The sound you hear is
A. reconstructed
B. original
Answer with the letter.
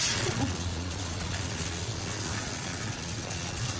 A